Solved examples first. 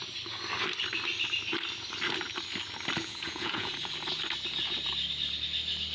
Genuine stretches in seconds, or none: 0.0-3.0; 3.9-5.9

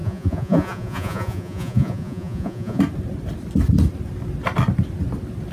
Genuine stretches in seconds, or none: 2.8-5.5

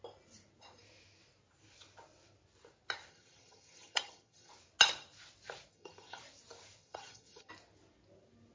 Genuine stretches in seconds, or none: 0.0-3.1; 4.5-5.7; 6.2-6.8; 7.5-8.5

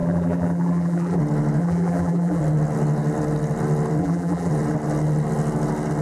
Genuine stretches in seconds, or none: 1.2-1.6; 2.4-4.0; 4.5-6.0